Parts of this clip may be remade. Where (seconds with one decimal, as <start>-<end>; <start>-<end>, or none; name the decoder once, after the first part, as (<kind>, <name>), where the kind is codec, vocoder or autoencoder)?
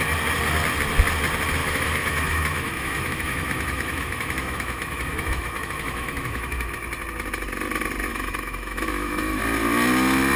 1.6-6.7 (autoencoder, DAC-VAE); 8.1-9.4